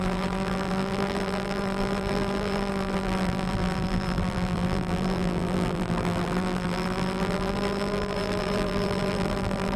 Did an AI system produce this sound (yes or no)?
yes